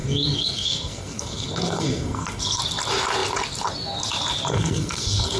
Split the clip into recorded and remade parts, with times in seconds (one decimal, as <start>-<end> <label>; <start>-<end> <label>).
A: 0.0-2.6 remade; 2.6-4.5 recorded; 4.5-5.4 remade